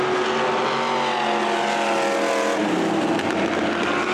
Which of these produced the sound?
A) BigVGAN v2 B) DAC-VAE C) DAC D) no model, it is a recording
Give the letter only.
D